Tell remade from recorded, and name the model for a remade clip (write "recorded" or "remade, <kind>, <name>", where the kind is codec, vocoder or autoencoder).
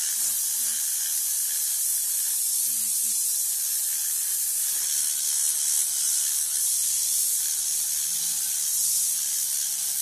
recorded